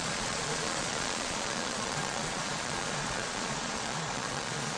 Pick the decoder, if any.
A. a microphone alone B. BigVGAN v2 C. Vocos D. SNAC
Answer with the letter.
C